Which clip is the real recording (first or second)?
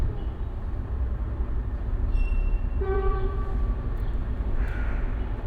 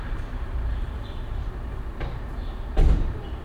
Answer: first